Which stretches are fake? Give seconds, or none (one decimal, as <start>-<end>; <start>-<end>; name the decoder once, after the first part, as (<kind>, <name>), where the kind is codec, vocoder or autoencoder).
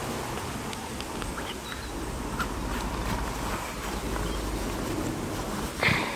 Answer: none